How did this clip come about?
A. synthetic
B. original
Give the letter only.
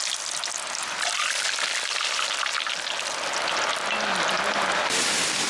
B